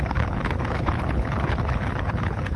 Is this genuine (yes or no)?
no